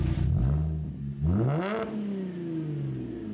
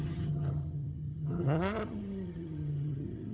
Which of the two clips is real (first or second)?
first